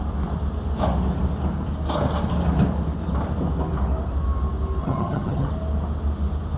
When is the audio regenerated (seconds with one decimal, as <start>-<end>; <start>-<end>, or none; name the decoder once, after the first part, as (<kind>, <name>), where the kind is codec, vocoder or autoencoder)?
4.8-5.5 (vocoder, HiFi-GAN)